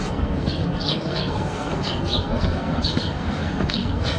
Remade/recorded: remade